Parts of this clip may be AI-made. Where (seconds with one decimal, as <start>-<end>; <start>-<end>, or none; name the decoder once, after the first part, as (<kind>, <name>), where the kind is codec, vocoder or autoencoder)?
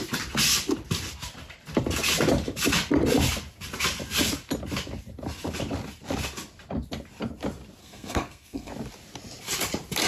7.8-8.7 (codec, SNAC)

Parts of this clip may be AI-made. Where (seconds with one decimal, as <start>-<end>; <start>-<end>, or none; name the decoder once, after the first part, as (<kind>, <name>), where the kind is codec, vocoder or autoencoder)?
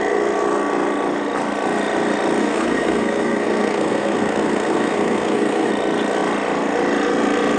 2.4-5.7 (codec, SNAC)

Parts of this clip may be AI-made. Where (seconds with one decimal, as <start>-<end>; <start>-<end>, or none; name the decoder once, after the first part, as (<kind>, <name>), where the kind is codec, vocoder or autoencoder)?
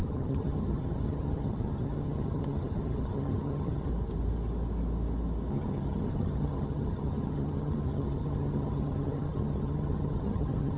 0.0-3.9 (vocoder, HiFi-GAN); 5.5-10.8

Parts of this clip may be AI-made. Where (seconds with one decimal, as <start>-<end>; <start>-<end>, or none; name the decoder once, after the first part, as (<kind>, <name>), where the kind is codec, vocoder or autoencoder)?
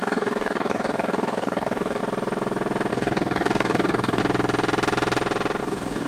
0.0-2.0 (codec, DAC); 2.9-4.2; 5.6-6.1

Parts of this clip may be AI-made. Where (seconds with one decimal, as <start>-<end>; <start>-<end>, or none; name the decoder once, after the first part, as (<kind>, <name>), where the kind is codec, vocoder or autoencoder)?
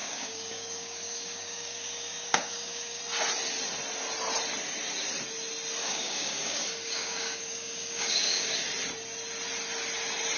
0.0-3.0 (codec, DAC); 5.8-8.6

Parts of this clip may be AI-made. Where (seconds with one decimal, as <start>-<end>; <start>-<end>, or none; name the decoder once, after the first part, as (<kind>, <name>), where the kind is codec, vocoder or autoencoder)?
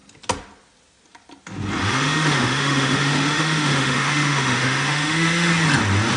1.8-5.5 (autoencoder, DAC-VAE)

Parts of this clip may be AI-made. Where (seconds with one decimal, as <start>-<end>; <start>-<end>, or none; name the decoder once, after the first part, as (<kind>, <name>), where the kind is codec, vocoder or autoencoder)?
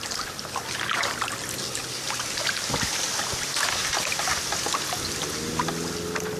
none